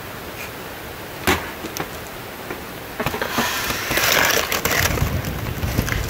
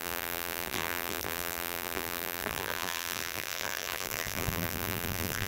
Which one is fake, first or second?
second